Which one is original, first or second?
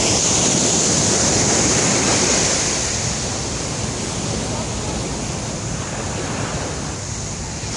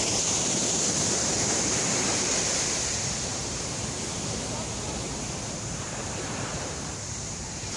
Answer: first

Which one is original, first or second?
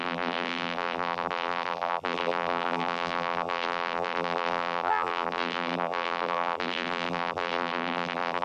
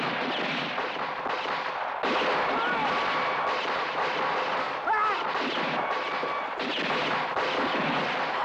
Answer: second